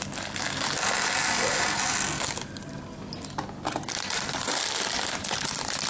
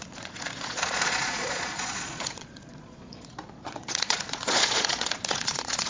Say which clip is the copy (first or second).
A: second